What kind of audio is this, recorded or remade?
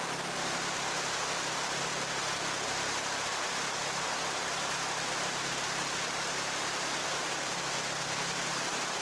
remade